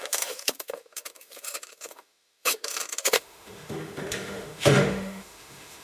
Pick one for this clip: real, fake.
fake